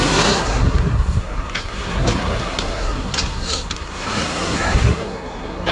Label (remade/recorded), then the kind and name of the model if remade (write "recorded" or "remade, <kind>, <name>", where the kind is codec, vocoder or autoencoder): remade, codec, SNAC